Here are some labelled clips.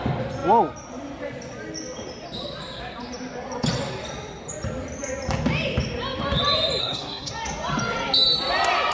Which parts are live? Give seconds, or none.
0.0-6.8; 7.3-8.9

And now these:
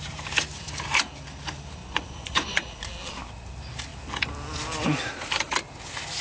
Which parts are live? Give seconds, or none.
0.0-1.8; 2.8-6.2